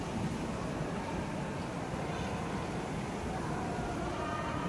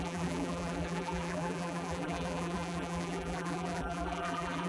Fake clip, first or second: second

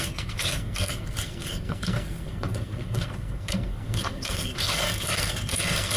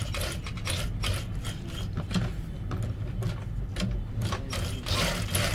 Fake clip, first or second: first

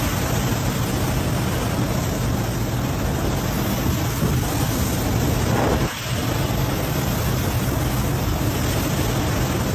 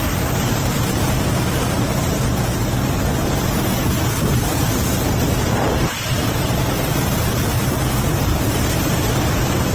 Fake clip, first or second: second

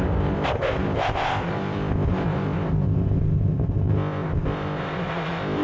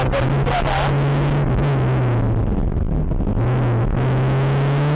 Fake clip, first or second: first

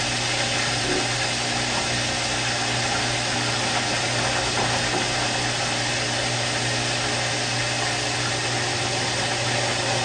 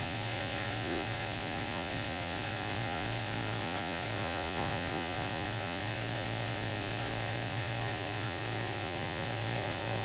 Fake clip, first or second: second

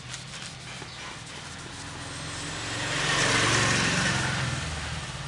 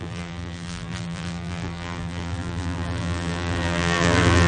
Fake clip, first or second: second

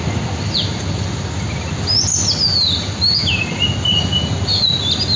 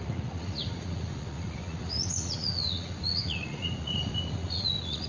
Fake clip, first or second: second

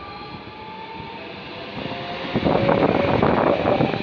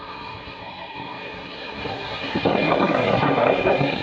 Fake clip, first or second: second